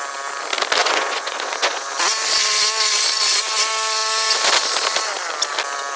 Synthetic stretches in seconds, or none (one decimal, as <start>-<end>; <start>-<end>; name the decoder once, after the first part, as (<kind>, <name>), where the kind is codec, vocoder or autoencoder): 0.8-1.9 (vocoder, Vocos)